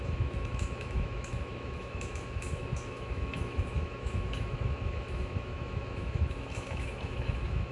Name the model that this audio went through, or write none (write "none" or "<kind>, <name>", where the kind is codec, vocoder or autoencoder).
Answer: autoencoder, DAC-VAE